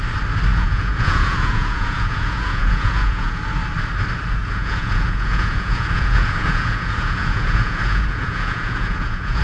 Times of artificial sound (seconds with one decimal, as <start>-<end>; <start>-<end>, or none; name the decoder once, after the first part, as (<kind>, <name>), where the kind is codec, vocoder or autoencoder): 0.5-3.4 (vocoder, Vocos); 4.4-9.4